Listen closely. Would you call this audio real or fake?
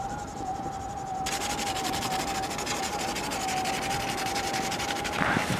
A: fake